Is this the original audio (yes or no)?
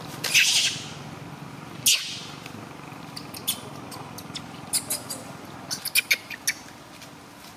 yes